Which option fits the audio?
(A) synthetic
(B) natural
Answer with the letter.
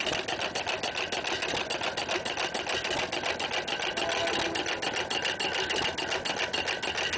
B